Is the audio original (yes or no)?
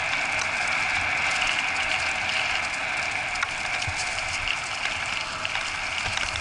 yes